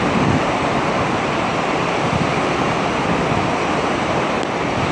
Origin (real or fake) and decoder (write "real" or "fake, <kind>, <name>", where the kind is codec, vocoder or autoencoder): fake, vocoder, BigVGAN v2